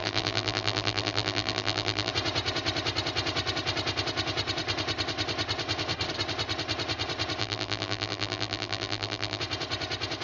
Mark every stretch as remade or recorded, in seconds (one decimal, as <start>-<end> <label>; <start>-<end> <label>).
0.0-2.1 remade; 2.1-7.4 recorded; 7.4-9.4 remade; 9.4-10.2 recorded